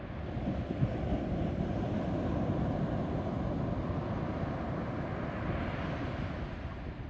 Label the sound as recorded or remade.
recorded